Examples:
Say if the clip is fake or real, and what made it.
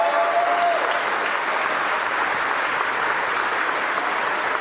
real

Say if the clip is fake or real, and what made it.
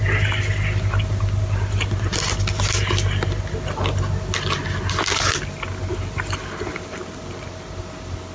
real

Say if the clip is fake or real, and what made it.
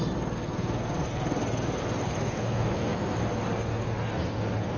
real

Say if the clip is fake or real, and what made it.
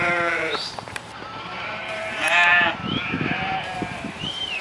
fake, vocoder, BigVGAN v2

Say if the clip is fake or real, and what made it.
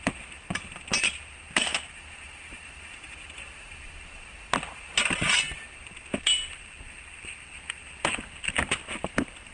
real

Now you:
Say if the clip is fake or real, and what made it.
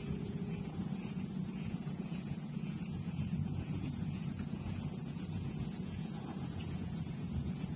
fake, vocoder, Vocos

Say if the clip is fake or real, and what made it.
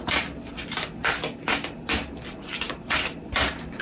real